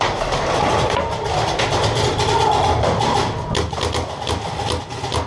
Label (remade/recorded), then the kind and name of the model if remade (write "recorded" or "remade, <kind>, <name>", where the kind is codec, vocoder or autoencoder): recorded